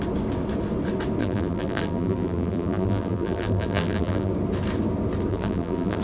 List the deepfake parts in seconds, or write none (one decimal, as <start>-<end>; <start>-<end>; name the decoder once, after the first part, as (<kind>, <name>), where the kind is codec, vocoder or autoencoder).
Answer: 1.2-4.3 (vocoder, BigVGAN v2); 5.3-6.0